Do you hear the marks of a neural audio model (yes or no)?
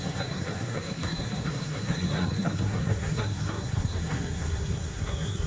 yes